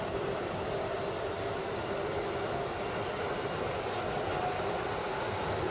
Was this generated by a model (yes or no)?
no